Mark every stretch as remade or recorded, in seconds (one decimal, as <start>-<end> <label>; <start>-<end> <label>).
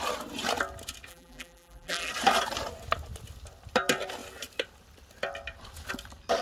0.0-1.1 recorded; 1.1-2.1 remade; 2.1-6.4 recorded